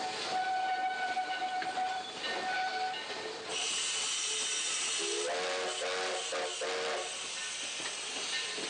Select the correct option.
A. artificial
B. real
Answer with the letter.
B